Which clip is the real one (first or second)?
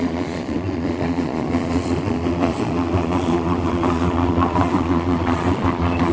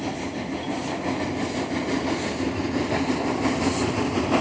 second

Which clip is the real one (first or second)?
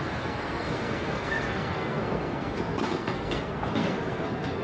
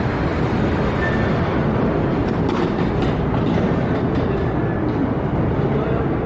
second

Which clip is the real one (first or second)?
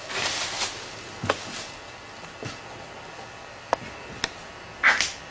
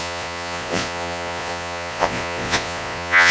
first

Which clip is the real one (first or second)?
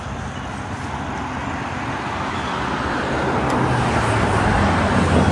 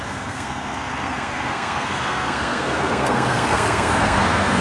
first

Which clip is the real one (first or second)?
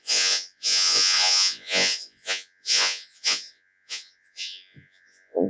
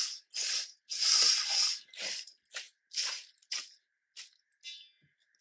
second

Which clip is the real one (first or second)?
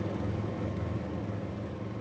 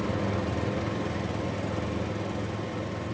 second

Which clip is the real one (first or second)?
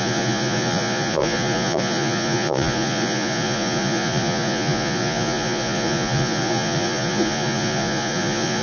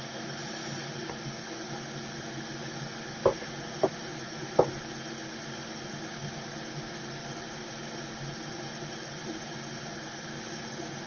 second